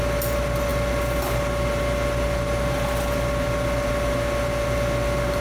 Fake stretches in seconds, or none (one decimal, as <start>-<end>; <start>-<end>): none